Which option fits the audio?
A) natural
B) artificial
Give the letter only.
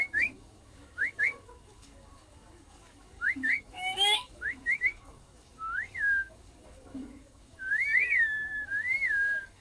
B